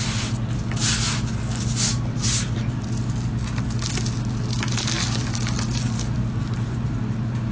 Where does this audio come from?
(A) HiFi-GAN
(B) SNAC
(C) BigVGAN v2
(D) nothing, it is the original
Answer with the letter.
D